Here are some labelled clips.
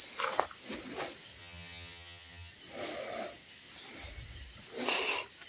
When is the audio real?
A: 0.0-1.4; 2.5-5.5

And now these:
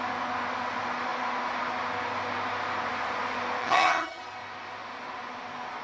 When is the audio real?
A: 0.0-3.6; 4.2-5.8

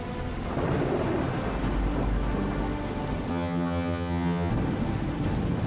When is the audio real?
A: 0.0-3.3; 4.5-5.7

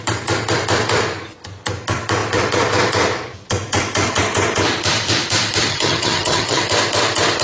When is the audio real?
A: 0.0-5.7; 6.6-7.4

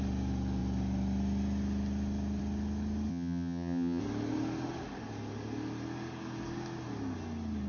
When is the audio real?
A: 0.0-3.1; 4.0-7.7

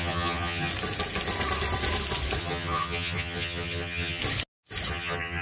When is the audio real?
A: 0.7-2.4; 4.2-4.9